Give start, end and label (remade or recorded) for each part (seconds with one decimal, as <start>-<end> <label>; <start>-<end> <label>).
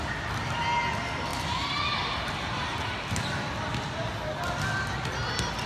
0.0-5.7 recorded